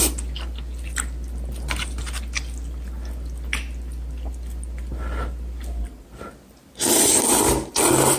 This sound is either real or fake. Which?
real